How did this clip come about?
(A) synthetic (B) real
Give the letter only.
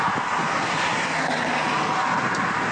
B